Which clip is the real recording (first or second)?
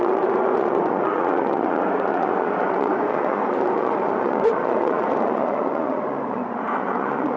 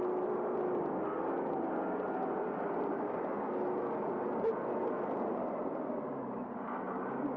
second